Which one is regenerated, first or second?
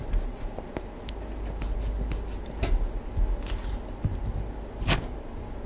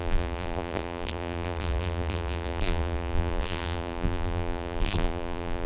second